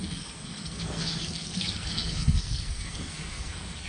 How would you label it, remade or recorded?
remade